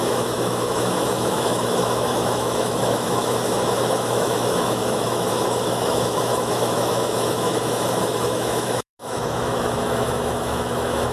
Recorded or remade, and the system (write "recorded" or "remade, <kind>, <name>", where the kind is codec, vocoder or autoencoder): remade, autoencoder, DAC-VAE